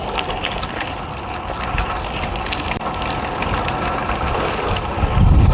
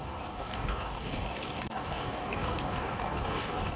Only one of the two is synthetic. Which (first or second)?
second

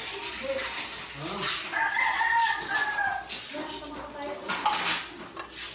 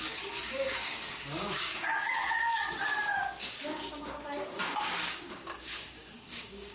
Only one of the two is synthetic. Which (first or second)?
second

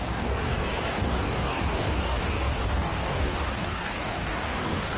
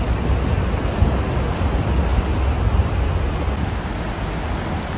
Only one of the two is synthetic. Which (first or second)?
first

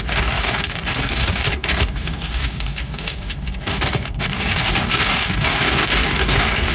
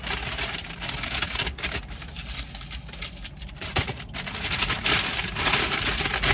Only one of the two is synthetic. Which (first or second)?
first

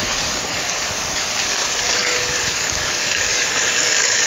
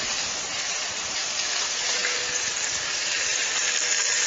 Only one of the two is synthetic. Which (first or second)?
first